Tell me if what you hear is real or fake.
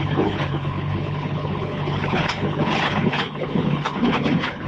fake